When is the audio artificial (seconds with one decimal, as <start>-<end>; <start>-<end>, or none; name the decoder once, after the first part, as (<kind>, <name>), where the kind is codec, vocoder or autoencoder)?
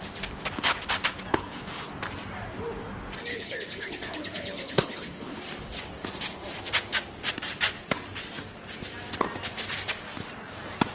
1.3-1.9 (codec, HILCodec); 3.3-5.4